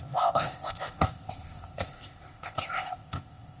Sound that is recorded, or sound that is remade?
remade